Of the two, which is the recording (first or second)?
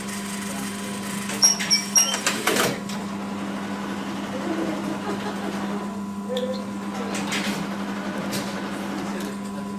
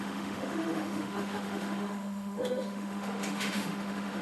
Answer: first